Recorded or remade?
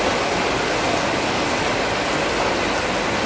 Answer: recorded